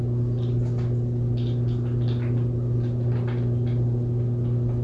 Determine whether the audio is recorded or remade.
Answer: recorded